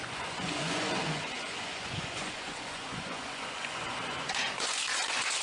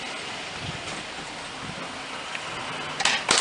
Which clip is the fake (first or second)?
first